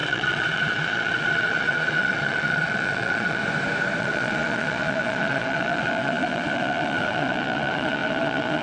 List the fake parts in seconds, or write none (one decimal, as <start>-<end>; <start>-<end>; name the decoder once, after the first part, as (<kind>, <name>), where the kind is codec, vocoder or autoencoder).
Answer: 0.0-3.4 (vocoder, Vocos); 4.0-8.6